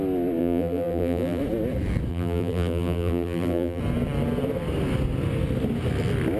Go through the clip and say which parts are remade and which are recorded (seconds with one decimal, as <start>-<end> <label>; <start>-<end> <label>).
0.0-0.4 recorded; 0.4-1.4 remade; 1.4-2.1 recorded; 2.1-3.8 remade; 3.8-6.4 recorded